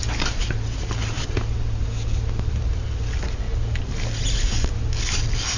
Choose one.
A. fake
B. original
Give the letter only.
B